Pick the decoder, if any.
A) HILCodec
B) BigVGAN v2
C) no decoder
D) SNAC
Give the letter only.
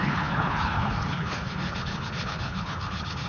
A